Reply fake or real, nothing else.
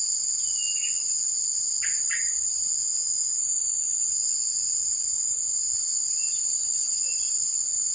real